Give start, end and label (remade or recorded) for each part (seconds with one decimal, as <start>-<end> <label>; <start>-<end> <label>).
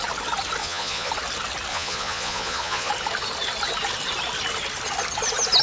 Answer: 0.0-0.6 recorded; 0.6-1.1 remade; 1.1-1.7 recorded; 1.7-2.9 remade; 2.9-5.6 recorded